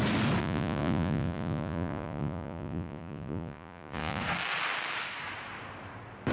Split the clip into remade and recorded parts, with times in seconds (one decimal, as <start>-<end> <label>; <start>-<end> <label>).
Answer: 0.0-0.4 recorded; 0.4-4.2 remade; 4.2-6.3 recorded